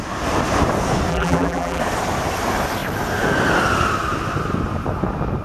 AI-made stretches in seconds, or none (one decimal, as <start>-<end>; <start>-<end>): 1.1-1.8